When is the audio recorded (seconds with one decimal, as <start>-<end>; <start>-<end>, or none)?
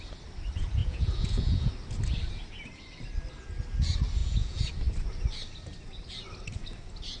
0.0-0.8; 1.7-4.2; 4.7-7.2